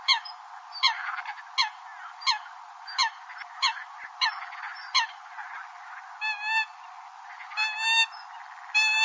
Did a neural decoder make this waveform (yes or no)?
no